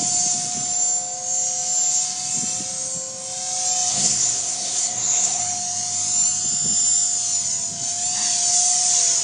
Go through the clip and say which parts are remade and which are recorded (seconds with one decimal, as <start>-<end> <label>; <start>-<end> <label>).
0.0-3.9 recorded; 3.9-5.4 remade; 5.4-9.2 recorded